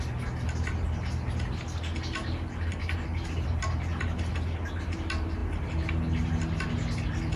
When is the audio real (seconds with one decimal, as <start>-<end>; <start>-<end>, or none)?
0.0-7.4